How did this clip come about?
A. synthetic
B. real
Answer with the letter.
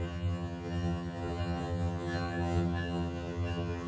A